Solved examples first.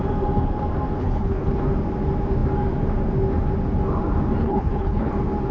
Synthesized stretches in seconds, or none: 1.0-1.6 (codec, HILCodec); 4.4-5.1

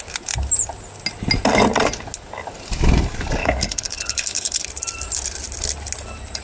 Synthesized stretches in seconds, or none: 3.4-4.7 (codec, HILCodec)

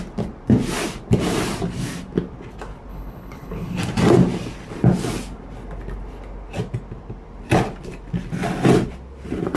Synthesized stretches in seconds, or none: 2.9-3.8 (codec, HILCodec)